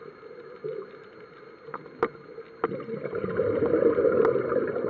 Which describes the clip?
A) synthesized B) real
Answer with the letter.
B